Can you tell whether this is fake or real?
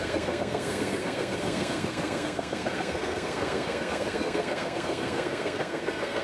fake